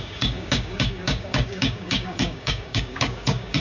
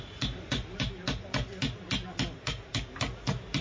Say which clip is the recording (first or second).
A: second